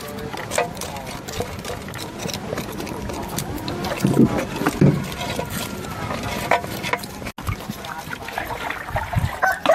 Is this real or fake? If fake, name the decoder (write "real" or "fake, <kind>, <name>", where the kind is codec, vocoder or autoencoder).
real